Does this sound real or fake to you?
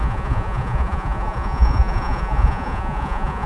fake